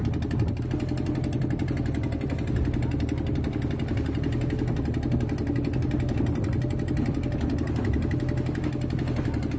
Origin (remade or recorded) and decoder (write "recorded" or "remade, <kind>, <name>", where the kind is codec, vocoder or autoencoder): recorded